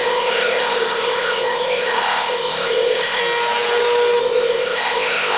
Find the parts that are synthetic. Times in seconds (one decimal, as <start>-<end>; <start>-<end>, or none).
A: 0.0-3.2; 4.2-5.4